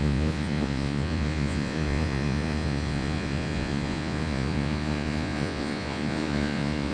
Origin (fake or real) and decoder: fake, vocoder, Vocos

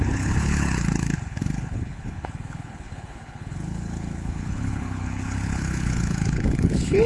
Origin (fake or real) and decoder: fake, codec, HILCodec